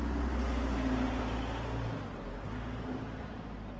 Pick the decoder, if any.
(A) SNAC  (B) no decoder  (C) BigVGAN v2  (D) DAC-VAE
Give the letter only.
B